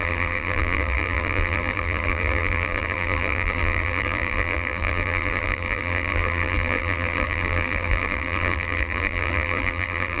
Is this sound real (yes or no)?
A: no